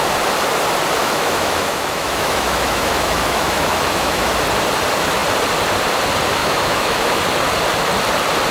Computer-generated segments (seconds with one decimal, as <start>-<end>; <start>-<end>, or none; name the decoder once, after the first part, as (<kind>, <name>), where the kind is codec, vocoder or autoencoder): 1.0-4.3 (autoencoder, DAC-VAE); 6.4-7.2